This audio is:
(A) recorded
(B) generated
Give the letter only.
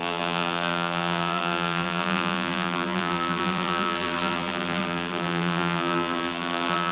B